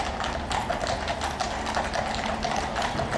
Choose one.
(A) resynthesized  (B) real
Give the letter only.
B